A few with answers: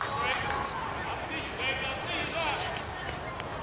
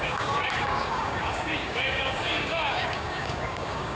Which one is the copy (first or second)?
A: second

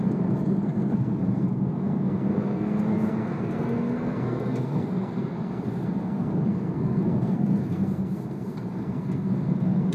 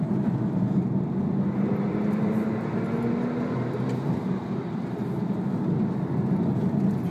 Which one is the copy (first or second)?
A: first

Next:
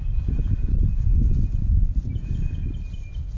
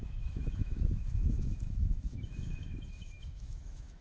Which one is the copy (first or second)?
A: second